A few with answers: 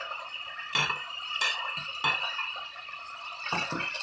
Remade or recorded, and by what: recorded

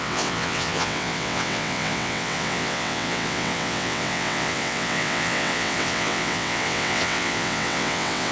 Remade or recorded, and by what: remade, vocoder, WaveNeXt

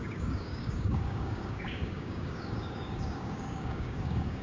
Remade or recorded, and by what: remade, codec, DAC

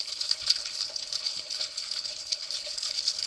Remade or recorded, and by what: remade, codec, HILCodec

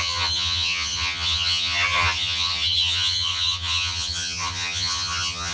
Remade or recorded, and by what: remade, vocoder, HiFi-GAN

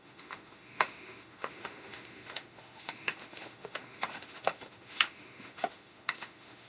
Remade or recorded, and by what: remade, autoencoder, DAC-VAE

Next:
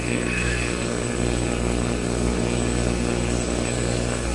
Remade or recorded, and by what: remade, codec, SNAC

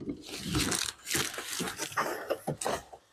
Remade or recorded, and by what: recorded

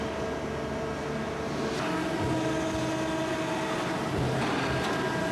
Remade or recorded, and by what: recorded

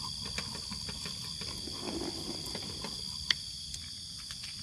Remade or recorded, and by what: recorded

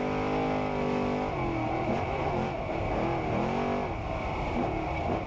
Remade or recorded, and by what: recorded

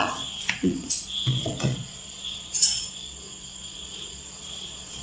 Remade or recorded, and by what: remade, vocoder, Vocos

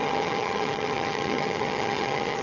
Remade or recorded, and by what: remade, vocoder, HiFi-GAN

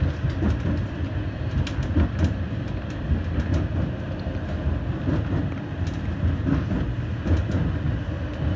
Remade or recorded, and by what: recorded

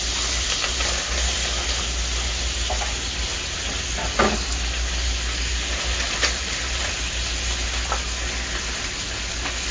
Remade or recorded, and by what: recorded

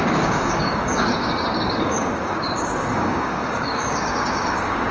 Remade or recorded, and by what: remade, codec, DAC